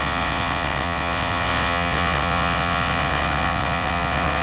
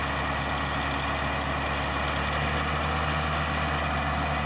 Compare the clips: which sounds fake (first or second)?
first